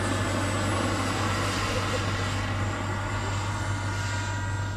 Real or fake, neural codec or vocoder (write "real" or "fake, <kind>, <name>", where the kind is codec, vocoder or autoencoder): real